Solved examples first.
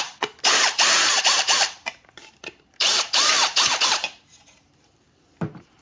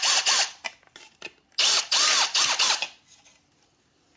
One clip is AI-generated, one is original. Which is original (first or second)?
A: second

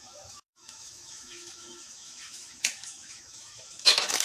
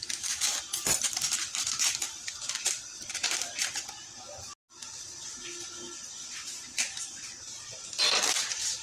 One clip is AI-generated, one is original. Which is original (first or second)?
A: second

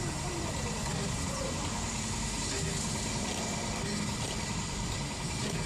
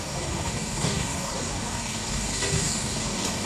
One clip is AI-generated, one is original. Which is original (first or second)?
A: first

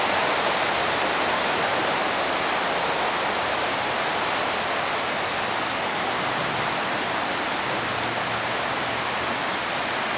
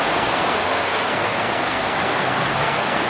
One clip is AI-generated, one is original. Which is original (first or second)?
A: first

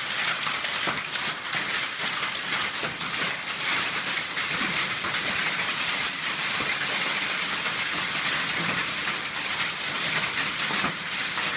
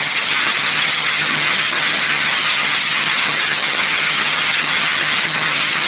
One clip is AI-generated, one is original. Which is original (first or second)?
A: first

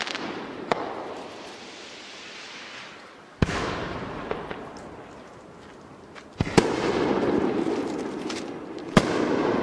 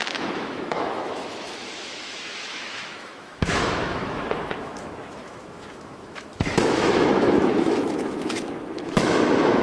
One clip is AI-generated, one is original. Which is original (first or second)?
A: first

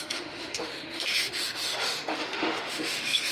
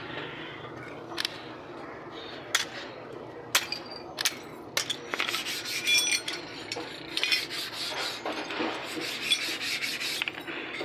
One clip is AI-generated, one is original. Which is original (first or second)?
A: second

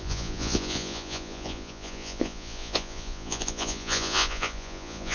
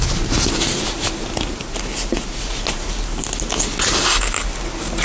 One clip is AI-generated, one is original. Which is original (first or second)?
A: second